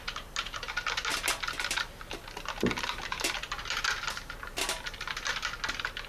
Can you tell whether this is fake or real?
real